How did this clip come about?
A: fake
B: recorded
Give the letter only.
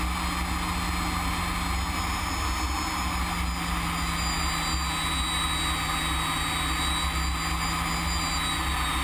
B